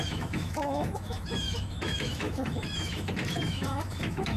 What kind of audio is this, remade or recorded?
remade